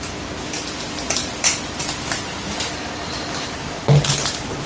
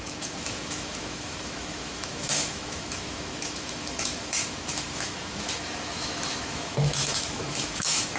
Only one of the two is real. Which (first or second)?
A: first